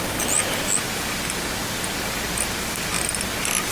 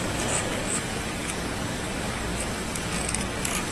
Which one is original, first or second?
first